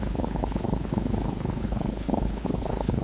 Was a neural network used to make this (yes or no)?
yes